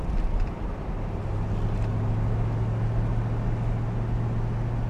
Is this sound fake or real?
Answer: real